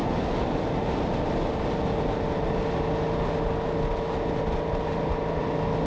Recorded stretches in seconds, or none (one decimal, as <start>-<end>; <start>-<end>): 0.0-5.9